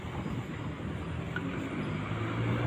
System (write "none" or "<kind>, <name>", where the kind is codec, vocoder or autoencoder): none